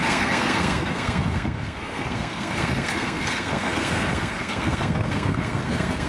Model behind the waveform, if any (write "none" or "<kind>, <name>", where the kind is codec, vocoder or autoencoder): codec, SNAC